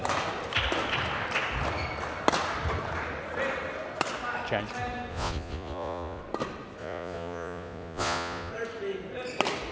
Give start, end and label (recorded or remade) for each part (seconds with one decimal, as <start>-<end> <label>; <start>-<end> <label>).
0.0-5.1 recorded; 5.1-6.2 remade; 6.2-6.8 recorded; 6.8-8.5 remade; 8.5-9.7 recorded